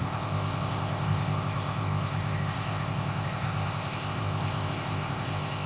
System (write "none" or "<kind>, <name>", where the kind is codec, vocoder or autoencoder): codec, ZipCodec